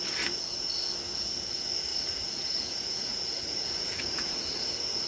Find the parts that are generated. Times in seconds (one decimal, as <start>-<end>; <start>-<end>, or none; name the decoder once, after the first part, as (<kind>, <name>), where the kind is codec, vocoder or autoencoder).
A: 1.9-5.1 (vocoder, Vocos)